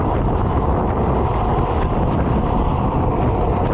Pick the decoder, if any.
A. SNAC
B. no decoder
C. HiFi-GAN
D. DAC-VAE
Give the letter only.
B